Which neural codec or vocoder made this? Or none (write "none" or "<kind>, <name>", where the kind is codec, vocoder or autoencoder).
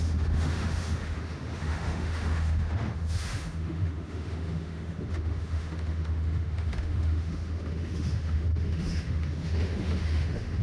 autoencoder, DAC-VAE